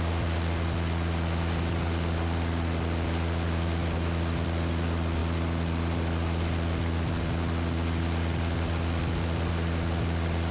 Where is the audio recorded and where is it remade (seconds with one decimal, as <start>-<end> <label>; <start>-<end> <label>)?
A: 0.0-10.5 recorded